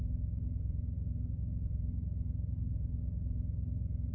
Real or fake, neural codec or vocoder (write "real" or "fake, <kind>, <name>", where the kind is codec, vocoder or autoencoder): real